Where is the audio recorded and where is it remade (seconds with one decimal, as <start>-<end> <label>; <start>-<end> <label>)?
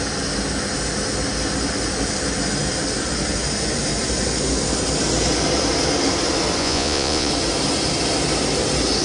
0.0-6.6 recorded; 6.6-7.3 remade; 7.3-9.0 recorded